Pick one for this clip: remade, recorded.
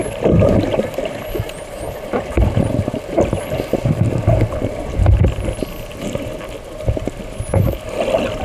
recorded